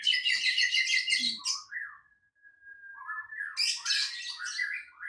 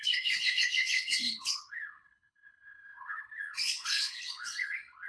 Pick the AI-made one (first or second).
second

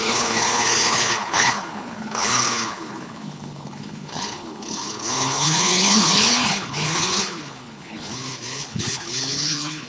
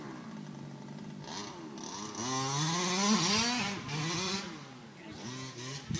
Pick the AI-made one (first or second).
first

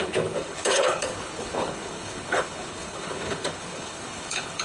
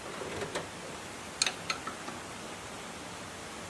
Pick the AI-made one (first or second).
first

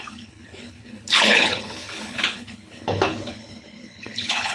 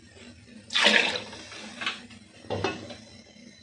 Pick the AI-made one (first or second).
first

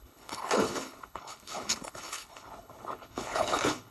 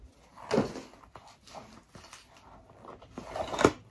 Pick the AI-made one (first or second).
first